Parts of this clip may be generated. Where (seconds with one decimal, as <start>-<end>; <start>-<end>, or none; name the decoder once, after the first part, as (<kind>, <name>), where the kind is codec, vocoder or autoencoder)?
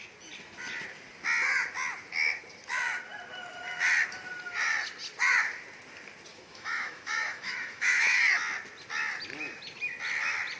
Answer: 6.3-8.2 (autoencoder, DAC-VAE)